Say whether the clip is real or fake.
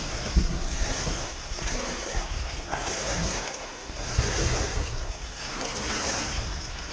fake